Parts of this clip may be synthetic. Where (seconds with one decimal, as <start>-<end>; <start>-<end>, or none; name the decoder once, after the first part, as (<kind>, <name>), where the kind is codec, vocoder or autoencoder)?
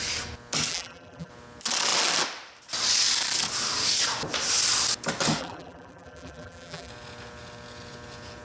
0.7-1.3 (vocoder, BigVGAN v2); 5.4-6.9